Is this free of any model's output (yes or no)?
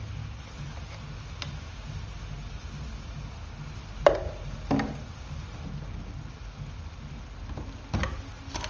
yes